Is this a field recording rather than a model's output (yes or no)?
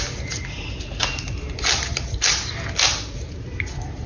yes